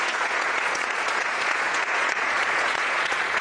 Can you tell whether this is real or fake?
fake